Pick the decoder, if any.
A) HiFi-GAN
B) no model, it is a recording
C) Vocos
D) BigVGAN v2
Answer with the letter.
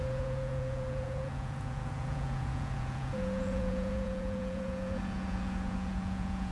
C